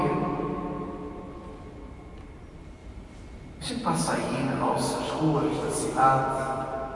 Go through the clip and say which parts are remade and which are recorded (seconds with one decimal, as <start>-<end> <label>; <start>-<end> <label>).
0.0-6.9 recorded